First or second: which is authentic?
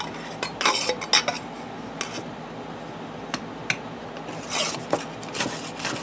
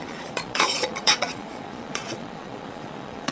first